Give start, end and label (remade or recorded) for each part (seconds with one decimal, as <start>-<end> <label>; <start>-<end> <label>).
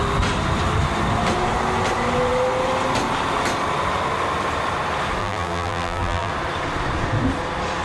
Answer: 0.0-5.2 recorded; 5.2-6.3 remade; 6.3-7.8 recorded